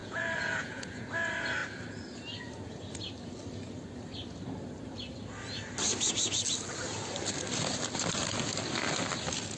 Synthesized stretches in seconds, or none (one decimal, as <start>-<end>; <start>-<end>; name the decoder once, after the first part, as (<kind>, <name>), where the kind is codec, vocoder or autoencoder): 0.0-1.1 (vocoder, Vocos)